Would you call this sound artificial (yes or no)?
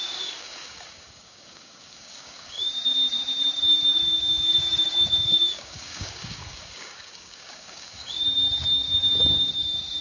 yes